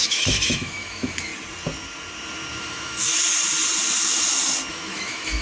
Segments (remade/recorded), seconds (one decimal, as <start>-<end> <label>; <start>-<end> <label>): 0.0-1.3 remade; 1.3-2.6 recorded; 2.6-3.1 remade; 3.1-4.7 recorded; 4.7-5.4 remade

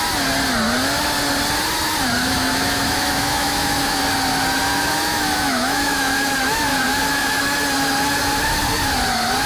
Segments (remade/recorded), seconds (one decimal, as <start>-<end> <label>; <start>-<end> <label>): 0.0-2.2 recorded; 2.2-4.0 remade; 4.0-4.7 recorded; 4.7-6.3 remade; 6.3-6.7 recorded; 6.7-7.4 remade; 7.4-9.5 recorded